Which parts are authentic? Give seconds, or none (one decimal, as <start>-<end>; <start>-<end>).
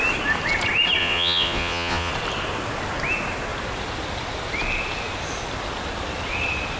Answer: 0.0-1.0; 2.1-6.8